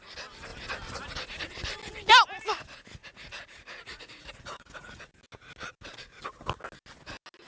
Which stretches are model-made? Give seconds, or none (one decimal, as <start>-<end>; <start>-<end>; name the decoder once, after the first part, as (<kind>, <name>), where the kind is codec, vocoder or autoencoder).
3.0-5.0 (vocoder, Vocos)